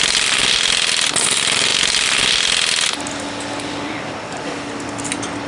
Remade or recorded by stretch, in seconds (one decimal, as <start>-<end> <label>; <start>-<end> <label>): 0.0-5.5 recorded